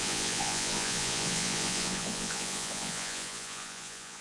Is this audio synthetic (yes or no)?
yes